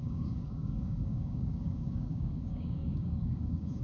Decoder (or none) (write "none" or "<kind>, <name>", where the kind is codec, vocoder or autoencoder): codec, DAC